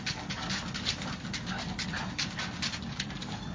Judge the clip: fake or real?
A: real